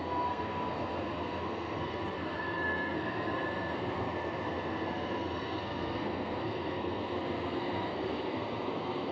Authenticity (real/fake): fake